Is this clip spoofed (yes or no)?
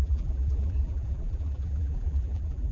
yes